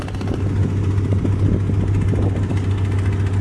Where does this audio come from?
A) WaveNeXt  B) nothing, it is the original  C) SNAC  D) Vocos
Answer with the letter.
B